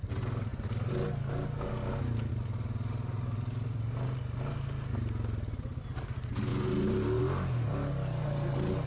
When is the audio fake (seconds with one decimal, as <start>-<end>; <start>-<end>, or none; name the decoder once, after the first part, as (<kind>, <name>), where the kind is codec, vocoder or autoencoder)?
none